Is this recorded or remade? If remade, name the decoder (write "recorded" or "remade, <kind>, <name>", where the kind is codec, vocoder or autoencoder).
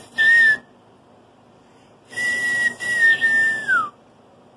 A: recorded